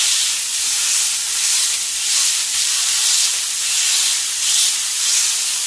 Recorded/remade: recorded